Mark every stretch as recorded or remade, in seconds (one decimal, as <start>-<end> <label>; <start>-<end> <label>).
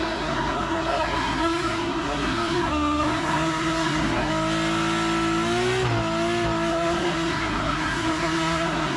0.0-4.3 remade; 4.3-6.7 recorded; 6.7-9.0 remade